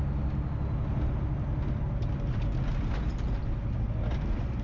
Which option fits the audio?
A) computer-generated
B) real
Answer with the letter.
B